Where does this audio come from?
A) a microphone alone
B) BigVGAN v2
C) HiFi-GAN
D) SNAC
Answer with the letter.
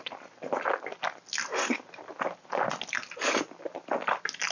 A